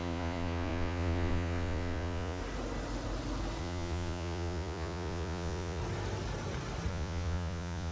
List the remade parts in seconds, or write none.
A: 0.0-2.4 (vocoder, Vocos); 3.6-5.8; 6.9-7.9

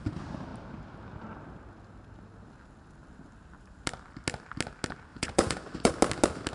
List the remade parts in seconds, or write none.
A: 5.1-5.9 (vocoder, Vocos)

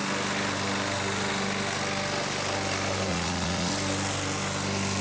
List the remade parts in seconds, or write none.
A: 3.1-3.7 (vocoder, Vocos)